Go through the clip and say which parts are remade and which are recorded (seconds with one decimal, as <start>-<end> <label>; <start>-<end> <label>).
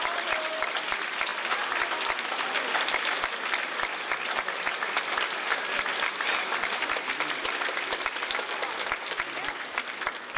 0.0-10.4 recorded